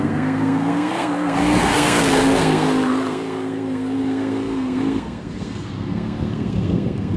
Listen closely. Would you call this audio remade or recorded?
remade